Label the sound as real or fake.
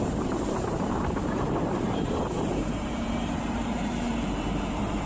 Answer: fake